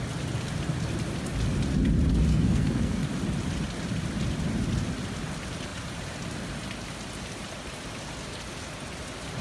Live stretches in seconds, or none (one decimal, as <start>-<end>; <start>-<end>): 0.0-2.3; 3.1-9.4